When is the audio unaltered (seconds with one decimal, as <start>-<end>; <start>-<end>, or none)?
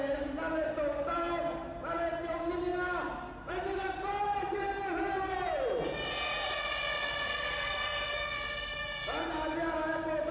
2.7-3.4; 7.9-9.2